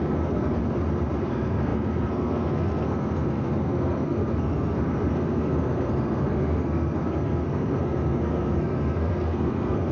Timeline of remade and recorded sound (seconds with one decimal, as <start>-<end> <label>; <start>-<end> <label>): 0.0-0.6 remade; 0.6-1.2 recorded; 1.2-9.9 remade